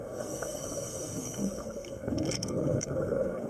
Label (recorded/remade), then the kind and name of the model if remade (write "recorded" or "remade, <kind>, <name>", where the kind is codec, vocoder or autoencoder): remade, codec, SNAC